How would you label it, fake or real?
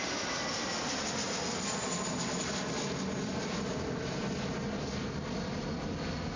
real